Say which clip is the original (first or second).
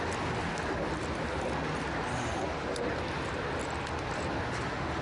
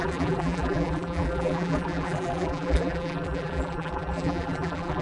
first